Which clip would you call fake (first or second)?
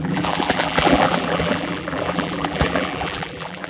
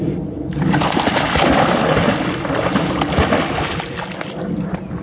first